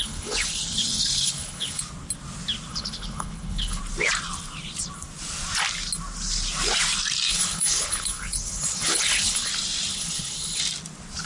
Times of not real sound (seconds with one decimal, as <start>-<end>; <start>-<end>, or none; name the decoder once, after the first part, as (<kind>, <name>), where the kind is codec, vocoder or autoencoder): 0.0-1.8 (codec, HILCodec); 2.7-3.8; 7.3-9.5; 9.9-10.6